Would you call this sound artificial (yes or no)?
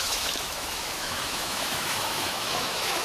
yes